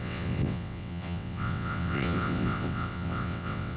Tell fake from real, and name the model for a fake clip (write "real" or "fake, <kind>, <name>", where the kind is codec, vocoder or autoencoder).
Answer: fake, vocoder, WaveNeXt